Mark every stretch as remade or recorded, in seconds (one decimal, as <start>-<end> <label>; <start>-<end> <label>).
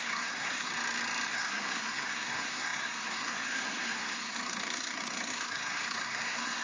0.0-0.7 remade; 0.7-1.3 recorded; 1.3-6.6 remade